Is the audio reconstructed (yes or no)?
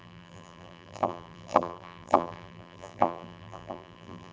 yes